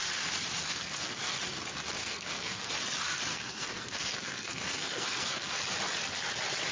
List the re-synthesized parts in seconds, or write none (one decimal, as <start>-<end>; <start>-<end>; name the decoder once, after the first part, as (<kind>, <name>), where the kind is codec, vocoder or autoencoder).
0.7-1.4 (codec, SNAC); 2.0-2.7; 3.3-5.5